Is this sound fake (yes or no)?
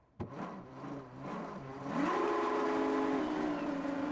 no